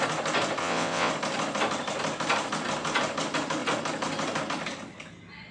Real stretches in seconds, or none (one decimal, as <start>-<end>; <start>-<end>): 0.0-0.6; 1.1-5.5